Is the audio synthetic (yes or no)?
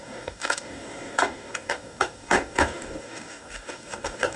yes